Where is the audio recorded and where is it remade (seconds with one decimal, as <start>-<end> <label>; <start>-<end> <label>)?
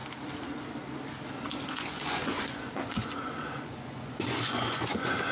0.0-1.7 recorded; 1.7-5.3 remade